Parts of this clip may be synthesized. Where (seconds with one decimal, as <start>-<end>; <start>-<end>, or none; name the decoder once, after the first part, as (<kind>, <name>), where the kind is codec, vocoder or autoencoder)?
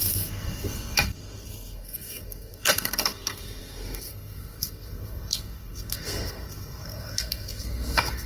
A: 0.0-8.3 (codec, SNAC)